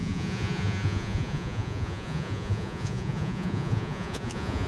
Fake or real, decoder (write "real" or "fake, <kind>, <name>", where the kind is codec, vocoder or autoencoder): fake, vocoder, Vocos